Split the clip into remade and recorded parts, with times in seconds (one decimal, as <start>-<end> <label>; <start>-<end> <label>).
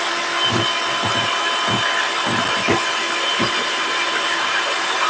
0.0-3.3 recorded; 3.3-5.1 remade